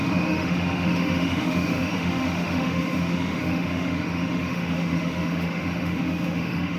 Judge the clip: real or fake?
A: fake